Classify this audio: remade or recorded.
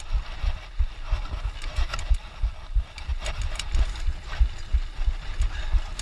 recorded